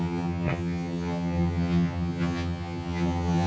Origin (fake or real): fake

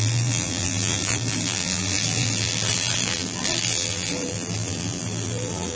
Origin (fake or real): fake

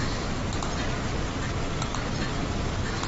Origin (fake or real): real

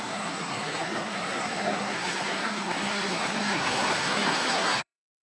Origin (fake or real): fake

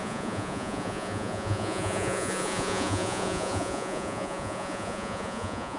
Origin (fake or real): fake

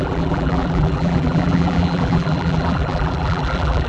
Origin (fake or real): fake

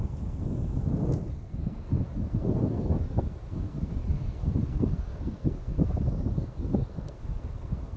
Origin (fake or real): fake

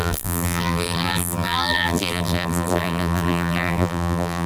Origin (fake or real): fake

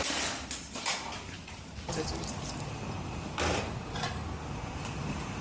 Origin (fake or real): real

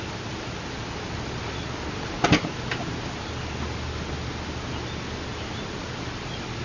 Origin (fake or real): real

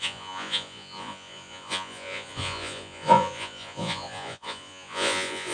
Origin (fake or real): fake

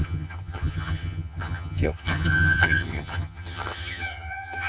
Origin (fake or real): fake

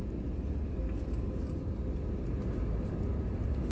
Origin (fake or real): real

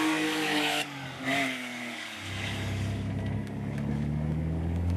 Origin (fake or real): fake